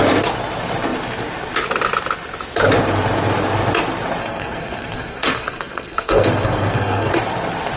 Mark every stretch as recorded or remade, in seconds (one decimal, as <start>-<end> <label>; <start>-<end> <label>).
0.0-4.2 recorded; 4.2-7.1 remade; 7.1-7.8 recorded